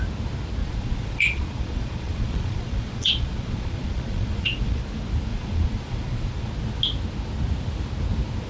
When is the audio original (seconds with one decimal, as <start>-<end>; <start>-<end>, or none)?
0.0-0.6; 4.8-5.3; 6.5-8.5